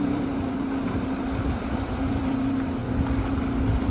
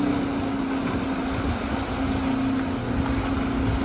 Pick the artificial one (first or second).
first